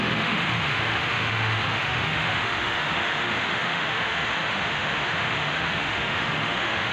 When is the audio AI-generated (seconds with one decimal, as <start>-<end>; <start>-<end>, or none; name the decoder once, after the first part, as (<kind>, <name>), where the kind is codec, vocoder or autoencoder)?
0.0-6.9 (autoencoder, DAC-VAE)